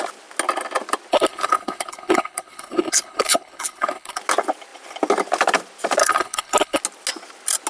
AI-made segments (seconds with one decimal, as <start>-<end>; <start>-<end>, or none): 1.1-4.2; 6.0-6.8